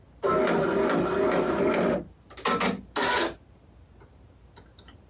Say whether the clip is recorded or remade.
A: recorded